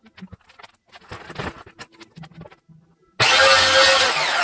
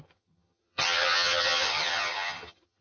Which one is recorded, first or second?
first